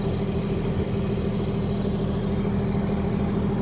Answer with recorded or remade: recorded